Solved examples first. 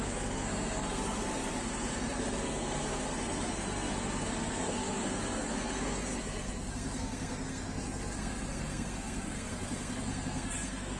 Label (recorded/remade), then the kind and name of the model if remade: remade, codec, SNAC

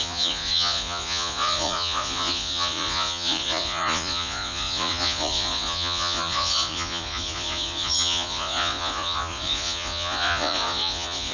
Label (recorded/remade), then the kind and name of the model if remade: remade, vocoder, Vocos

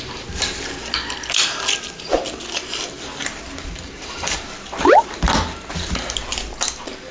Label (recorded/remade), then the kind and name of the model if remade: recorded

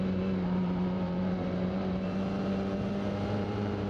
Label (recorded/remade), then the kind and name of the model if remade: remade, vocoder, BigVGAN v2